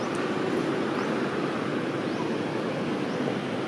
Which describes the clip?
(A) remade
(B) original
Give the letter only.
B